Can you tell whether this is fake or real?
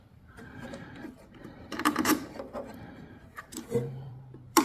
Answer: fake